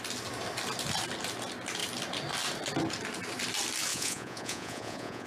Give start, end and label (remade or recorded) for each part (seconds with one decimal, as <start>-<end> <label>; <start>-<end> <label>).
0.0-3.9 recorded; 3.9-5.3 remade